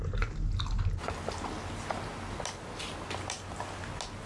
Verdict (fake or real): real